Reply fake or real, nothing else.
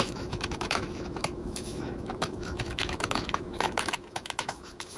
fake